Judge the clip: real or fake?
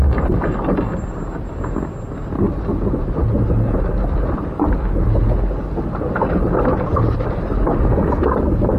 real